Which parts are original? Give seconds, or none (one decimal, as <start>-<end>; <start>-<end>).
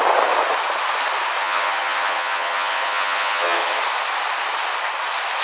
0.0-1.4; 3.8-5.4